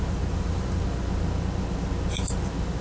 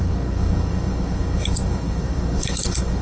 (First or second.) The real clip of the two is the first